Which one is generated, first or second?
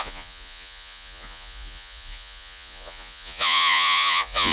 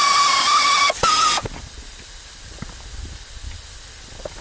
first